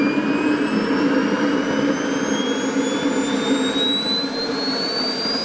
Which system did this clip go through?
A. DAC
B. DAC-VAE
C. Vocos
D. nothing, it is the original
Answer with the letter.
D